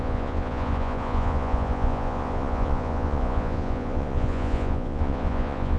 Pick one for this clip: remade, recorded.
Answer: remade